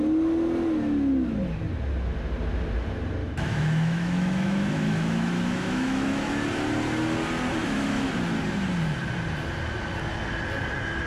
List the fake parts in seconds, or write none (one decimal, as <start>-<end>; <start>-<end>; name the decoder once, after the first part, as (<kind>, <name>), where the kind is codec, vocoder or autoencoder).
3.2-6.3 (autoencoder, DAC-VAE); 7.6-8.1